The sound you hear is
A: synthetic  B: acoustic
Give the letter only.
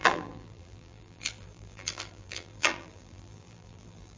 A